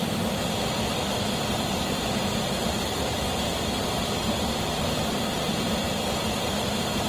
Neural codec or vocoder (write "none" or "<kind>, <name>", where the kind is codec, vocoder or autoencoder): vocoder, BigVGAN v2